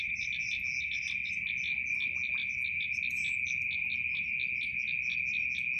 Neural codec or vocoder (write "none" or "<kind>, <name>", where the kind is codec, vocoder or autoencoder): none